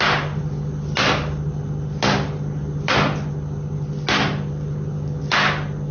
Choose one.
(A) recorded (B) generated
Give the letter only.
A